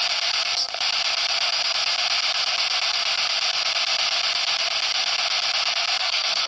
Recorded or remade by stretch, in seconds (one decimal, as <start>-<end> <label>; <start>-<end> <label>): 0.0-6.0 recorded; 6.0-6.5 remade